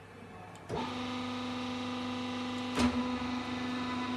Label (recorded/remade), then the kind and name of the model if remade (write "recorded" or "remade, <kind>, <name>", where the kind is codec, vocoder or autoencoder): recorded